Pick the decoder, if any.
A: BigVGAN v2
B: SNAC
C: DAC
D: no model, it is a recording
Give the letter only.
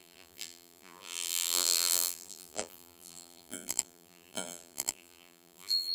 A